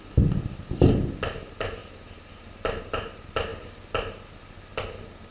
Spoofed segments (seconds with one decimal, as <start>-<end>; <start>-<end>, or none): none